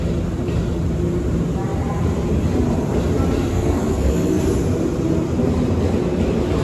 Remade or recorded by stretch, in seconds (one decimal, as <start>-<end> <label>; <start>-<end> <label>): 0.0-3.5 recorded; 3.5-4.4 remade; 4.4-6.6 recorded